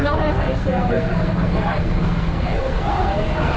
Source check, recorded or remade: remade